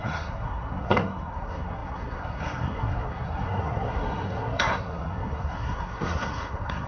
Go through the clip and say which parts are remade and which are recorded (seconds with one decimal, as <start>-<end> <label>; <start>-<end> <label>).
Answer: 0.0-6.9 remade